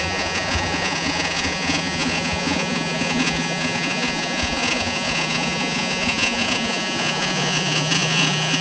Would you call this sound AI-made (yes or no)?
yes